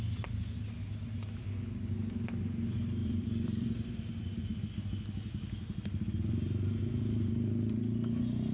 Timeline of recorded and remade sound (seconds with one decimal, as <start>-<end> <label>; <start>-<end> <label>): 0.0-3.0 recorded; 3.0-3.9 remade; 3.9-8.5 recorded